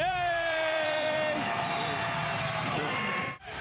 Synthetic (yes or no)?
yes